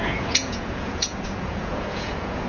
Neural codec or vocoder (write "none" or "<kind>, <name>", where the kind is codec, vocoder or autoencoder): vocoder, Vocos